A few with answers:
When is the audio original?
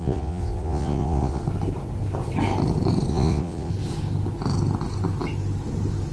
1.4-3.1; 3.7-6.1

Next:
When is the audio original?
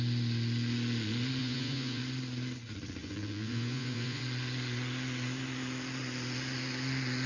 0.0-1.4; 2.0-3.0; 4.2-7.3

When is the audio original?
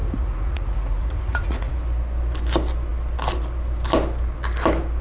1.7-5.0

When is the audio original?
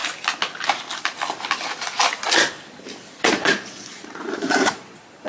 0.0-3.2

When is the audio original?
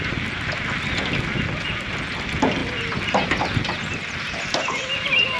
0.0-5.4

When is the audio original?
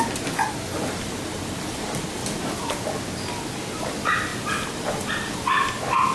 0.0-6.1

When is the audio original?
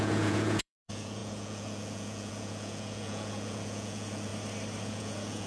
4.3-4.8